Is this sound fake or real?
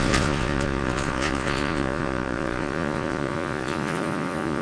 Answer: fake